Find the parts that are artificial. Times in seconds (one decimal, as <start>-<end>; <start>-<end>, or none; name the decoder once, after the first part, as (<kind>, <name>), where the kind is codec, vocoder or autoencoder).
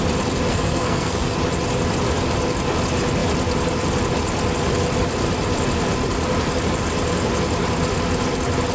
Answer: 0.5-1.3 (codec, SNAC)